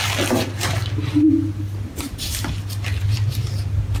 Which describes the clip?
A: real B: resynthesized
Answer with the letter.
A